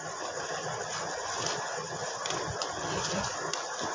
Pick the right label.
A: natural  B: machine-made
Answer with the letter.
A